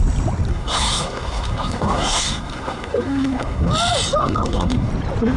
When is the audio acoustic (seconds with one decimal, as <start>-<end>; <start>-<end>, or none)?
0.0-0.5; 3.7-4.2; 4.9-5.4